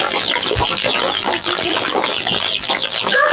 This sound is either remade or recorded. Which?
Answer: remade